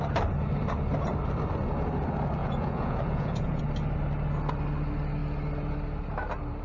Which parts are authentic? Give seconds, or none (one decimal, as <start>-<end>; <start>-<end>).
0.0-2.4; 3.6-6.6